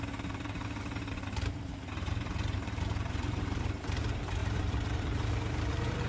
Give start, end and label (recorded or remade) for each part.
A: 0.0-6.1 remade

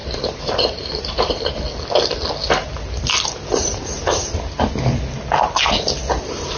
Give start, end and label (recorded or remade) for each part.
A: 0.0-1.6 remade; 1.6-6.6 recorded